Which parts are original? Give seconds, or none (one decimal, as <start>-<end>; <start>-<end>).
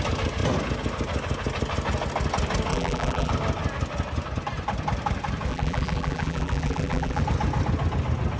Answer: 0.0-2.7; 3.3-5.5; 7.2-8.4